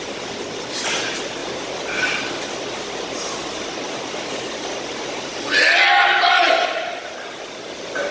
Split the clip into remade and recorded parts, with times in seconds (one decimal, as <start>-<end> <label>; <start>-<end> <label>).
0.0-8.1 recorded